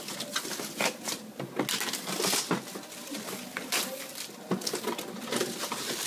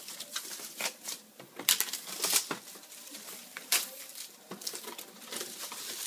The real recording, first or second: first